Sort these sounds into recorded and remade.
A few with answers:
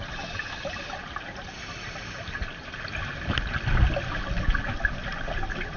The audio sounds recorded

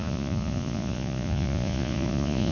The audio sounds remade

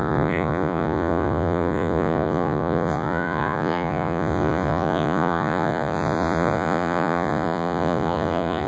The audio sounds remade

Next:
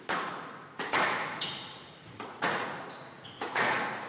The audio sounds remade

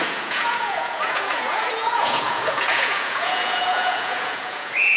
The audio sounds remade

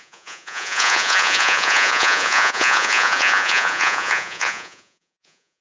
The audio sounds remade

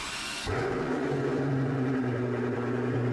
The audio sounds remade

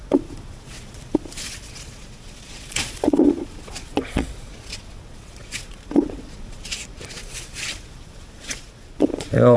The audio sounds remade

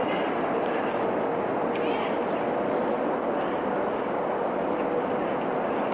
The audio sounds recorded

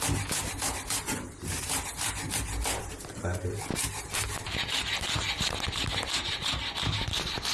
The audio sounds recorded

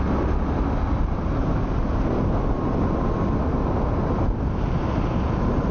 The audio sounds recorded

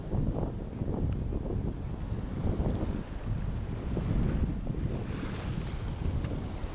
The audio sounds recorded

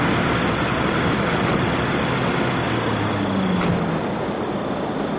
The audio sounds recorded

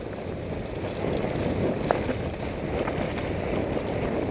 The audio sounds recorded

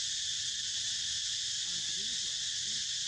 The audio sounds recorded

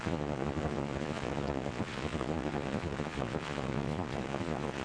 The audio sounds remade